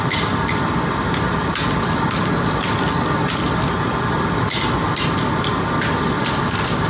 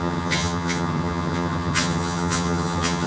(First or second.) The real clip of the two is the first